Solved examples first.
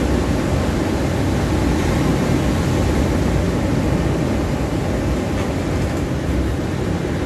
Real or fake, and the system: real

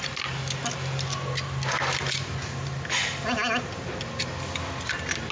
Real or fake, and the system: real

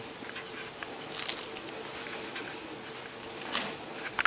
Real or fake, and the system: real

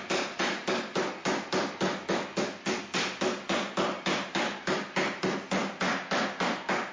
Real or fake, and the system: real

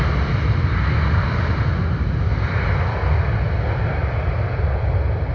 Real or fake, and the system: real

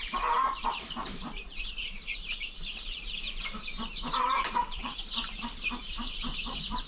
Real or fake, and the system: fake, vocoder, BigVGAN v2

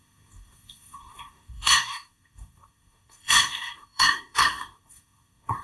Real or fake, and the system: fake, codec, SNAC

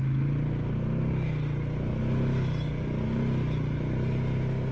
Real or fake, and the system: real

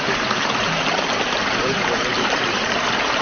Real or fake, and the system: fake, vocoder, BigVGAN v2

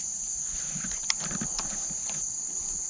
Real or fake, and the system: real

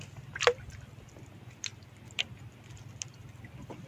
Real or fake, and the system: real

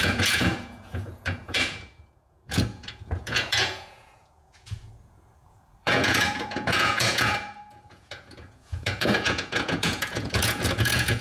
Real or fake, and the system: fake, vocoder, Vocos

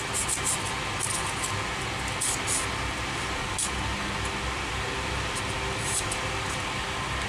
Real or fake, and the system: real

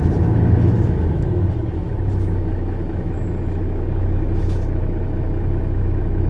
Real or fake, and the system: fake, autoencoder, DAC-VAE